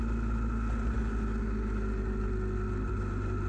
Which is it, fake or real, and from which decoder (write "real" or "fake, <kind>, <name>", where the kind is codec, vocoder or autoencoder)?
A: real